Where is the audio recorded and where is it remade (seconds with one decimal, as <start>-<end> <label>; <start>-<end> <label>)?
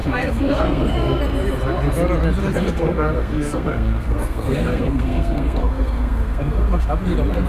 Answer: 0.0-1.2 remade; 1.2-2.4 recorded; 2.4-6.9 remade; 6.9-7.5 recorded